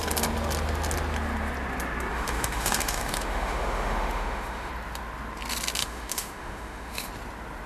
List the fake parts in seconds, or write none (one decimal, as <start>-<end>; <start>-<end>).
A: 2.1-4.7; 5.8-7.1